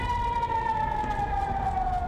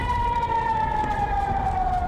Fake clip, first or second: second